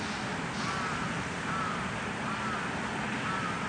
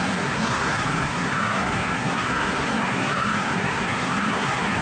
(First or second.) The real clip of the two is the first